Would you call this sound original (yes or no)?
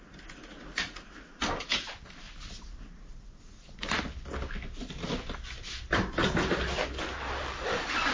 yes